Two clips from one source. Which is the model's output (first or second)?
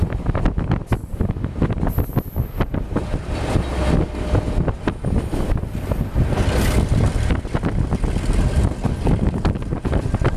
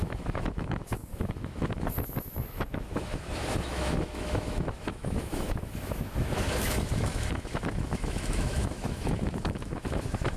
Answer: second